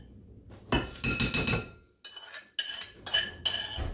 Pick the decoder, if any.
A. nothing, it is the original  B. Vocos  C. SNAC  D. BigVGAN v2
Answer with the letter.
A